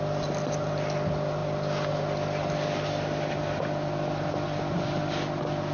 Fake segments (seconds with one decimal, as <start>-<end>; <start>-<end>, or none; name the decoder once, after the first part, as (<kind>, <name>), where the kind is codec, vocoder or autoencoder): none